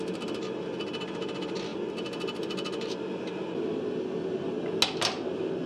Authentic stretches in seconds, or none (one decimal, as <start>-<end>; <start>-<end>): 0.0-5.7